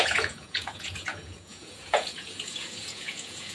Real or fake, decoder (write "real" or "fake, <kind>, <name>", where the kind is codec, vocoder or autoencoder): fake, vocoder, Vocos